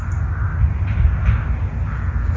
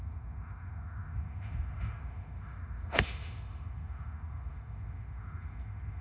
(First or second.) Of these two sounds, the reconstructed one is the second